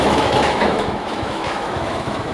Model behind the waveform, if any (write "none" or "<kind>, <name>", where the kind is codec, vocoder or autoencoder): autoencoder, DAC-VAE